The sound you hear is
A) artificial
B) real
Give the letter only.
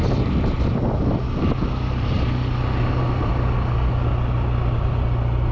B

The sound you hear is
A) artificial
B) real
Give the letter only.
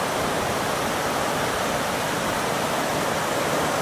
B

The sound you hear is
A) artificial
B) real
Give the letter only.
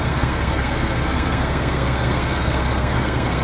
A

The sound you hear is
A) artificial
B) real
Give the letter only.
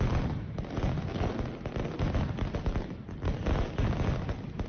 B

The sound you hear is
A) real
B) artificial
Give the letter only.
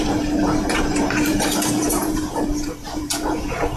B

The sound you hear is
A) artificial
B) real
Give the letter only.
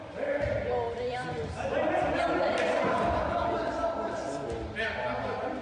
B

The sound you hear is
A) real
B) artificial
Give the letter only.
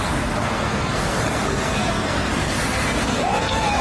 B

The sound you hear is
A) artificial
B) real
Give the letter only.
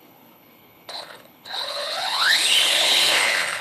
A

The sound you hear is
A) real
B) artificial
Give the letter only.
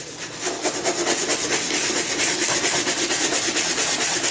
A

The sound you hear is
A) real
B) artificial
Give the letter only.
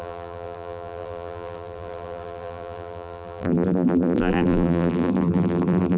B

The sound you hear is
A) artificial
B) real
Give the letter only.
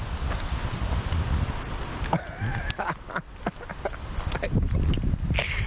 B